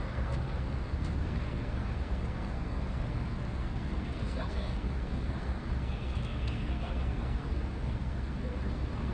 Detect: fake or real fake